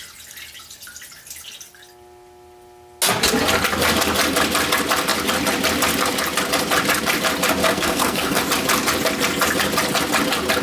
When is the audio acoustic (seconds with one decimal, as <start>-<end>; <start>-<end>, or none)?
0.0-7.6; 8.4-10.6